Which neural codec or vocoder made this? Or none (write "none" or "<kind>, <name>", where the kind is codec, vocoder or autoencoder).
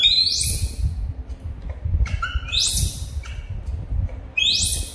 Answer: none